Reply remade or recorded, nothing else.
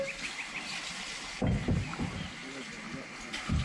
recorded